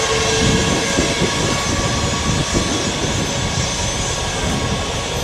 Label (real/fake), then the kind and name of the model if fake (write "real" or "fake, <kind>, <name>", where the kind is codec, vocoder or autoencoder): real